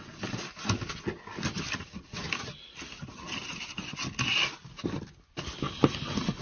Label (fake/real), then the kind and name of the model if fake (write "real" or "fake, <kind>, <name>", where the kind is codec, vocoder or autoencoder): real